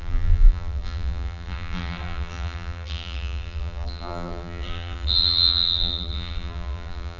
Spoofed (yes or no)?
yes